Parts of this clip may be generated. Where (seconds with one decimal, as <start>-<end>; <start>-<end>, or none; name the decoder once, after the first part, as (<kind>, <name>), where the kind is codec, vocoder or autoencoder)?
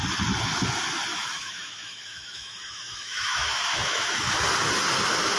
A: 1.1-4.3 (autoencoder, DAC-VAE)